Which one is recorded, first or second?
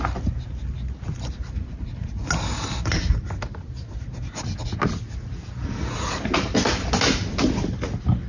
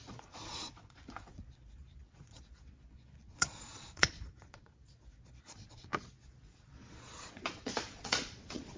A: first